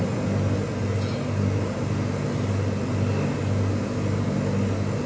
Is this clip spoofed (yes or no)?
no